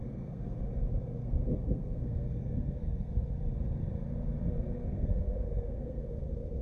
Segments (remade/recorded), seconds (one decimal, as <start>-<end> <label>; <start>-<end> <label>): 0.0-0.6 remade; 0.6-1.2 recorded; 1.2-3.2 remade; 3.2-4.9 recorded; 4.9-6.0 remade; 6.0-6.6 recorded